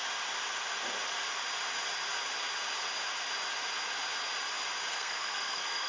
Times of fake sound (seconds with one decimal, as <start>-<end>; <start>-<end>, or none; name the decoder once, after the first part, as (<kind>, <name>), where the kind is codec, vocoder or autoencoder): 4.9-5.9 (codec, SNAC)